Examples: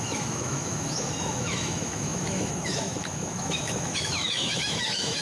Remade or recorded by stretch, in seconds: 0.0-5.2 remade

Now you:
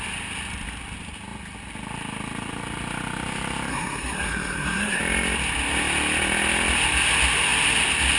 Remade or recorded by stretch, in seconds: 0.0-3.7 recorded; 3.7-5.0 remade; 5.0-8.2 recorded

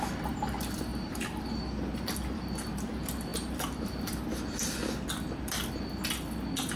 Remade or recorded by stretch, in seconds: 0.0-6.8 recorded

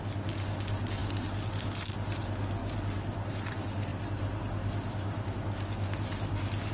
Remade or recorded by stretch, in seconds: 0.0-2.6 recorded; 2.6-3.3 remade; 3.3-3.9 recorded; 3.9-6.7 remade